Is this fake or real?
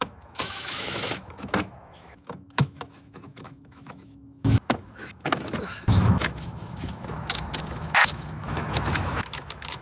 fake